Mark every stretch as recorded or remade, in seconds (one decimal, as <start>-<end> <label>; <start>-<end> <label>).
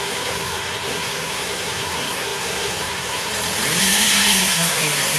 0.0-3.3 remade; 3.3-3.8 recorded; 3.8-5.2 remade